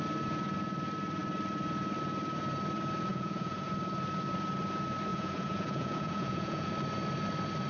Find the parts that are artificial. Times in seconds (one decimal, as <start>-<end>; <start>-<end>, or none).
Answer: 3.1-3.7; 5.1-6.7